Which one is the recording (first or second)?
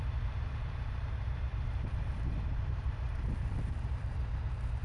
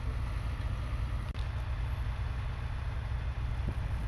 second